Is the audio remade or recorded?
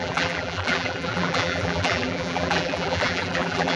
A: remade